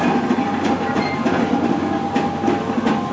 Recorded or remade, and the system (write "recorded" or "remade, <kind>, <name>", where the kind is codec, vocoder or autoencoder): recorded